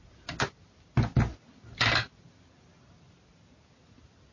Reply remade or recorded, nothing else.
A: recorded